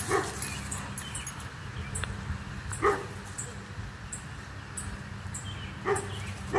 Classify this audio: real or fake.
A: real